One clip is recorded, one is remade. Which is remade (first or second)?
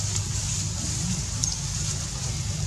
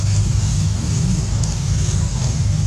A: second